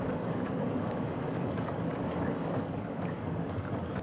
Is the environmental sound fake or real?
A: fake